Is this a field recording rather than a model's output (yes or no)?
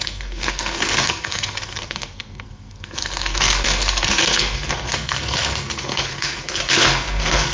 no